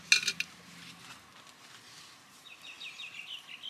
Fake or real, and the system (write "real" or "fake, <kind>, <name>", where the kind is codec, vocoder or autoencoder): real